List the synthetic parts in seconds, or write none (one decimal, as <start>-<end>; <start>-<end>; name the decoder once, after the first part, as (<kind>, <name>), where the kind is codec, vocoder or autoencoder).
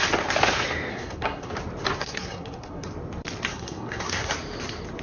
0.9-1.5 (codec, SNAC); 2.0-2.9; 3.5-4.3